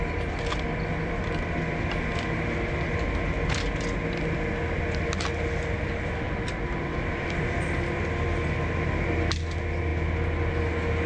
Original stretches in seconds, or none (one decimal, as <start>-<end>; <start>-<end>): 0.0-11.1